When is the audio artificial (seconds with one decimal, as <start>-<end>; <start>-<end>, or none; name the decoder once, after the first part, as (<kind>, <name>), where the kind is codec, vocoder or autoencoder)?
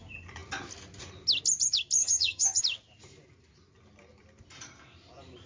2.0-2.6 (vocoder, HiFi-GAN)